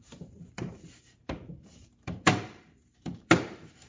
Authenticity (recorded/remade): remade